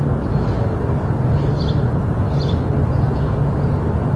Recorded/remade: recorded